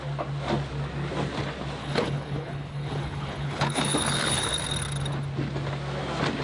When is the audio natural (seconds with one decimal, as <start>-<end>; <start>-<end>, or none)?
0.0-1.8; 4.6-6.4